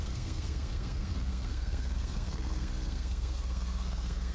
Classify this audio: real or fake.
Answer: fake